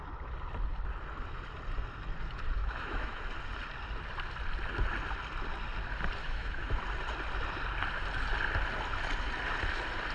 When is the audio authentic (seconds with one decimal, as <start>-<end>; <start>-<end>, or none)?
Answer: 0.0-2.6; 3.2-6.2; 6.8-10.1